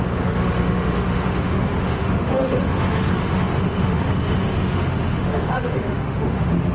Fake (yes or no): yes